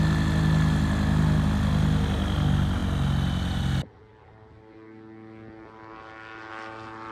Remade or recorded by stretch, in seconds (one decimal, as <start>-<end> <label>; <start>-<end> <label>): 0.0-7.1 recorded